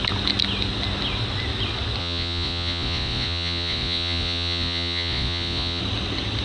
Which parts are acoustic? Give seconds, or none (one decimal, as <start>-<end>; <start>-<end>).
0.0-2.0; 5.8-6.4